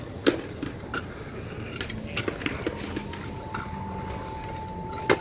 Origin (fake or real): real